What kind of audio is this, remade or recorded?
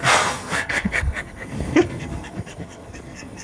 remade